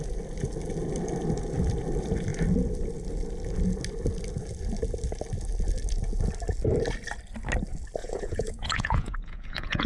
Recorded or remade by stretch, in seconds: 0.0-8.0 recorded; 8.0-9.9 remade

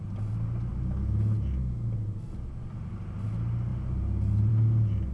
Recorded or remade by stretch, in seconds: 0.0-5.1 recorded

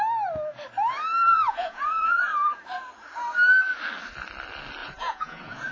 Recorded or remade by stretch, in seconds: 0.0-1.3 recorded; 1.3-2.2 remade; 2.2-4.8 recorded; 4.8-5.7 remade

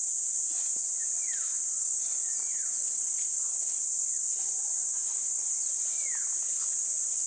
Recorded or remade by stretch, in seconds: 0.0-1.5 recorded; 1.5-4.6 remade; 4.6-5.1 recorded; 5.1-6.0 remade; 6.0-7.3 recorded

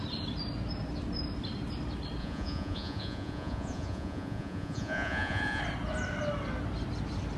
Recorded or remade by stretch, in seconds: 0.0-2.2 recorded; 2.2-5.6 remade; 5.6-7.4 recorded